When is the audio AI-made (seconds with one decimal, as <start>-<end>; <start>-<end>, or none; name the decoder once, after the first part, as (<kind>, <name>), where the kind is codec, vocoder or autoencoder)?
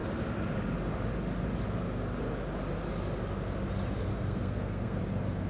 4.1-5.0 (codec, SNAC)